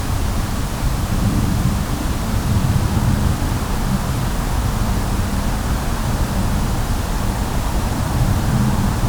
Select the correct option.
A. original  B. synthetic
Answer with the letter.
B